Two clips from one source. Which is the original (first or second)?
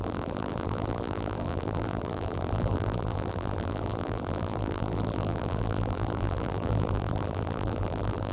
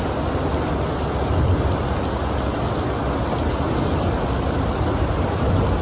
second